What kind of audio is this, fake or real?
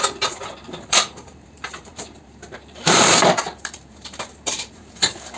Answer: fake